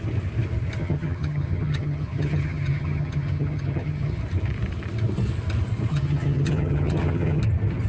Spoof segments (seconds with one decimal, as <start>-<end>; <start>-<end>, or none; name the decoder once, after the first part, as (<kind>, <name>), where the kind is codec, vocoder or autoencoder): 0.8-4.2 (vocoder, HiFi-GAN); 5.9-7.4